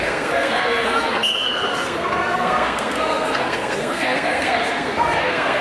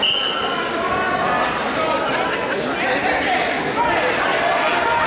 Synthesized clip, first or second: first